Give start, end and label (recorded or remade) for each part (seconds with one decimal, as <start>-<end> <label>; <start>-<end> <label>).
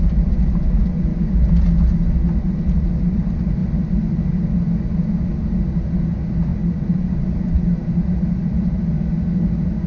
0.0-6.5 recorded; 6.5-8.8 remade; 8.8-9.9 recorded